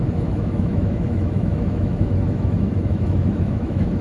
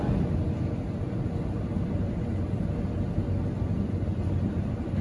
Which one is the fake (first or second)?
first